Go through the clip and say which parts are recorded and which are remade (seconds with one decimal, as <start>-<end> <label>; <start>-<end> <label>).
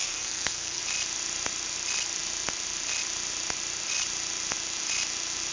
0.0-0.8 remade; 0.8-5.5 recorded